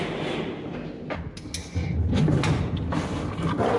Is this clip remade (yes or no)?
no